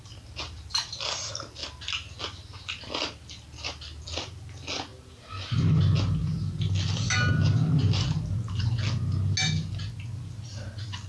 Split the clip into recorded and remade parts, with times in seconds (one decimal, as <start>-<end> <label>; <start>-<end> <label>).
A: 0.0-11.1 recorded